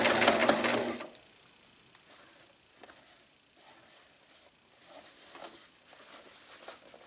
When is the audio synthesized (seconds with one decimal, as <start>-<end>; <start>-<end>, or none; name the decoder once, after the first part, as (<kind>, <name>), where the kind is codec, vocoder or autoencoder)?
none